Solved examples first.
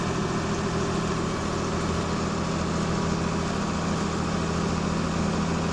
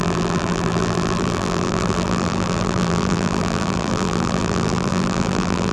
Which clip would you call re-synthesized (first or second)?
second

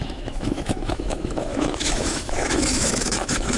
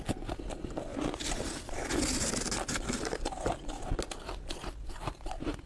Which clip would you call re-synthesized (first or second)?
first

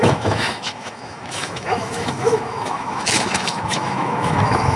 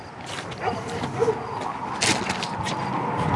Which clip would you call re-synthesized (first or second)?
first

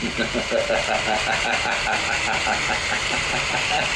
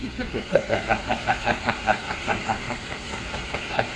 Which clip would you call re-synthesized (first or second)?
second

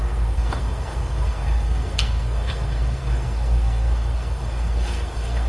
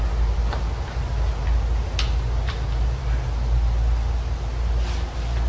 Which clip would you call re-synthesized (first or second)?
first